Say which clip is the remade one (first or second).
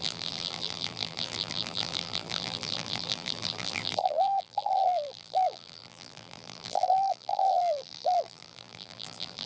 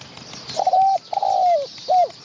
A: first